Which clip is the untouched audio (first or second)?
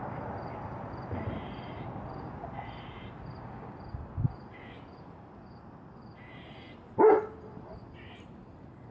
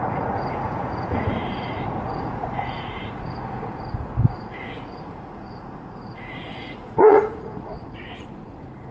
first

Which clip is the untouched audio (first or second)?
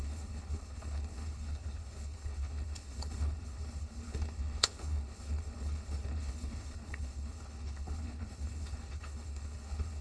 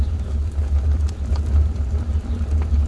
second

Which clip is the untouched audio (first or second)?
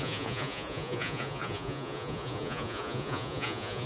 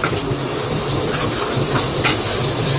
second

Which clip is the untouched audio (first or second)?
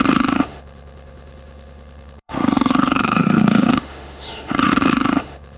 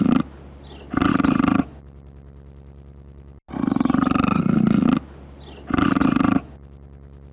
second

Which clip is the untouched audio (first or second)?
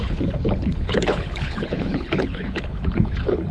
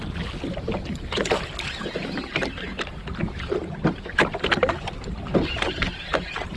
second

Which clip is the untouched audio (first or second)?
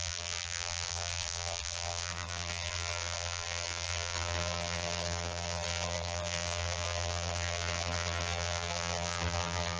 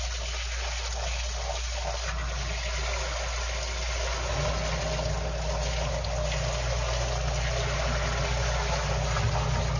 second